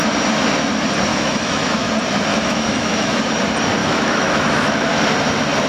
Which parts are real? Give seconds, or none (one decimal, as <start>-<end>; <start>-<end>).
0.0-1.1; 1.9-2.3; 3.2-3.8; 4.9-5.7